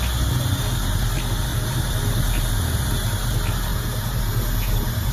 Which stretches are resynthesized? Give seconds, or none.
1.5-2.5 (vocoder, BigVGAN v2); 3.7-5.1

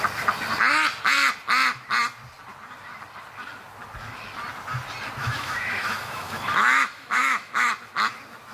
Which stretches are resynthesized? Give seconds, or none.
5.2-7.7 (autoencoder, DAC-VAE)

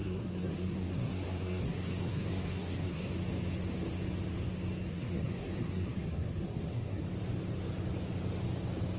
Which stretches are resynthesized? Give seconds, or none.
0.0-3.1 (codec, SNAC); 4.9-7.0

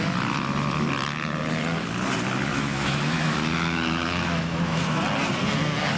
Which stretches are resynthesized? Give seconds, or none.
2.5-5.0 (autoencoder, DAC-VAE)

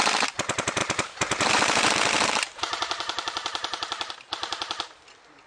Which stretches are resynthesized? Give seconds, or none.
0.8-4.1 (vocoder, BigVGAN v2)

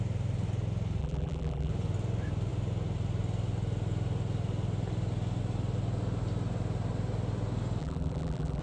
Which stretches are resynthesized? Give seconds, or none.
1.0-1.7 (vocoder, BigVGAN v2); 7.8-8.6

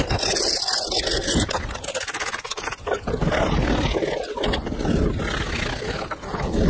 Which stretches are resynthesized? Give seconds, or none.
none